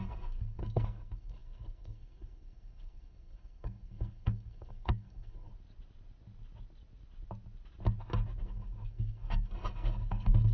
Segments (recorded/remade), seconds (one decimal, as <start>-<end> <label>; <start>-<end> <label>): 0.0-5.5 remade; 5.5-8.4 recorded; 8.4-10.5 remade